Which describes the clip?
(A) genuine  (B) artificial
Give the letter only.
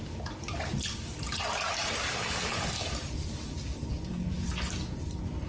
A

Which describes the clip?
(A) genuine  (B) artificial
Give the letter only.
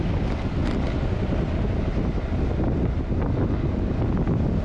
A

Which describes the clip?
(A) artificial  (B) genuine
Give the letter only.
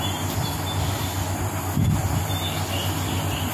B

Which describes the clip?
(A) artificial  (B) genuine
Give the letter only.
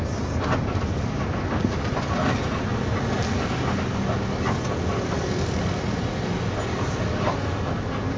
B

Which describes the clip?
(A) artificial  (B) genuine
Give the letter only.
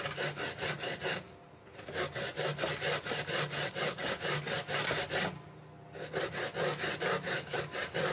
B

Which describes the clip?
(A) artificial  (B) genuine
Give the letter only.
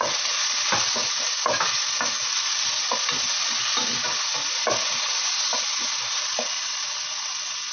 B